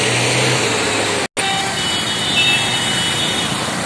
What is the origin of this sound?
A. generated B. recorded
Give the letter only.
B